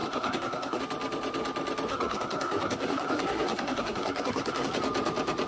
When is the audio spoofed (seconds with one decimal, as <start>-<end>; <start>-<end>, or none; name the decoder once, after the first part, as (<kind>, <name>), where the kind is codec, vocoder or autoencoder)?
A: 0.0-0.8 (codec, SNAC); 1.9-4.7